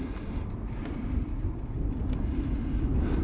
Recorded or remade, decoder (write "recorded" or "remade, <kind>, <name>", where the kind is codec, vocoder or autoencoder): recorded